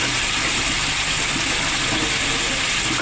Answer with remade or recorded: recorded